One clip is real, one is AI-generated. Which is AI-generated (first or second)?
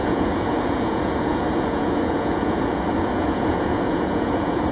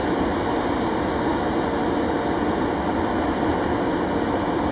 first